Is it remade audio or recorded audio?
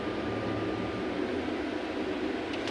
recorded